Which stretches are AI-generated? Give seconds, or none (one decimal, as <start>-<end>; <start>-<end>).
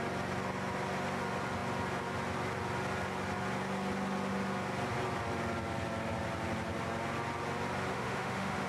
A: 7.9-8.7